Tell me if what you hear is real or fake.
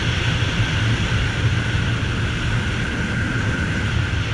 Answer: real